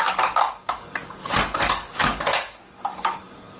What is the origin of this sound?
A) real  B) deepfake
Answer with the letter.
B